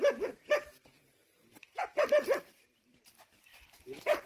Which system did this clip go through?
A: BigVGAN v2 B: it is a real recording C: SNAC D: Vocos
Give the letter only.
A